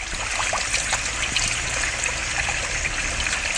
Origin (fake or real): real